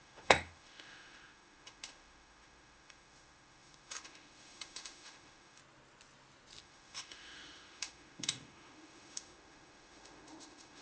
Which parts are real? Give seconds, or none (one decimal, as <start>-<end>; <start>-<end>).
5.6-6.6

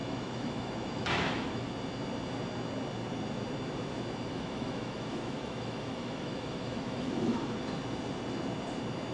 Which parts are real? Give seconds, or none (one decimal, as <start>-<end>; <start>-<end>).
1.7-4.3; 7.6-9.1

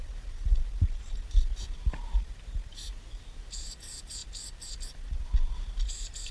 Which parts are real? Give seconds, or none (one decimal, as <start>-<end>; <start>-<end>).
0.0-6.3

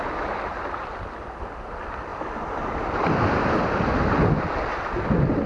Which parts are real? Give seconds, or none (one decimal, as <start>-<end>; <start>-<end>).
0.0-5.5

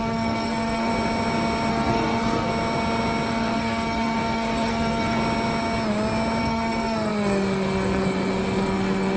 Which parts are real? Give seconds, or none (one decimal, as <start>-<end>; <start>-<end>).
0.9-1.7; 2.5-3.3; 5.2-6.4

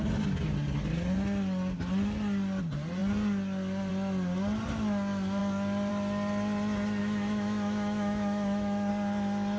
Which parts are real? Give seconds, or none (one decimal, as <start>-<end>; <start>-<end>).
0.0-7.0; 8.9-9.6